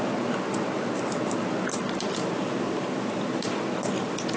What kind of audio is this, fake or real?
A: real